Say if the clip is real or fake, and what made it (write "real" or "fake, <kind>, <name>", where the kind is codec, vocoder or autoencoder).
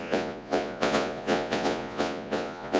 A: fake, vocoder, Vocos